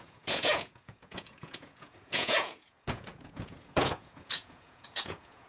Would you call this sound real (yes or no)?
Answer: no